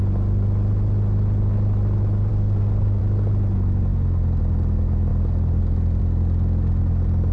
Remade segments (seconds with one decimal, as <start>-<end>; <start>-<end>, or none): 2.3-3.0